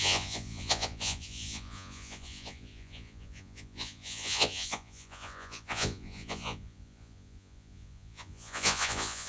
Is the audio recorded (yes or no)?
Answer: no